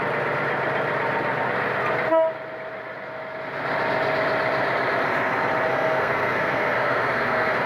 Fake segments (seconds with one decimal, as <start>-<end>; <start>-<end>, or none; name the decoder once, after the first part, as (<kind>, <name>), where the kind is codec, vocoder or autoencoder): 5.7-7.7 (codec, SNAC)